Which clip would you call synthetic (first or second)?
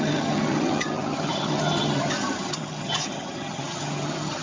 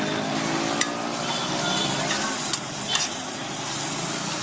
first